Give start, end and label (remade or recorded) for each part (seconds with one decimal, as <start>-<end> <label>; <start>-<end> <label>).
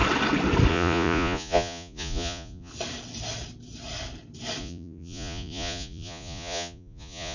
0.0-0.7 recorded; 0.7-2.7 remade; 2.7-4.6 recorded; 4.6-7.3 remade